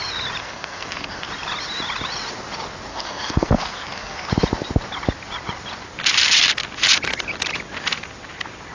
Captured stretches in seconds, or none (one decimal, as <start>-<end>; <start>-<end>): 0.0-0.4; 1.3-2.9; 4.3-8.7